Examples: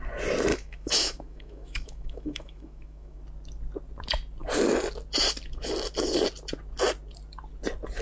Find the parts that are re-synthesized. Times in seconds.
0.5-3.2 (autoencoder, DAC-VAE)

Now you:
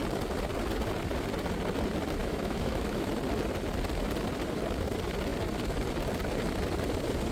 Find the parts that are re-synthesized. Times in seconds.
2.2-3.1 (autoencoder, DAC-VAE)

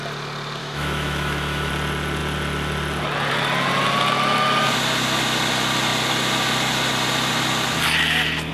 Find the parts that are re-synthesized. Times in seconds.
0.6-1.7 (autoencoder, DAC-VAE)

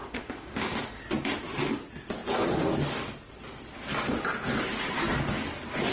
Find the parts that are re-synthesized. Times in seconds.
0.0-1.0 (autoencoder, DAC-VAE)